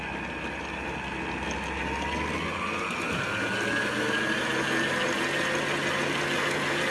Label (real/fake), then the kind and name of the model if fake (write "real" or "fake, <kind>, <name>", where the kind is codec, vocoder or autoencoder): real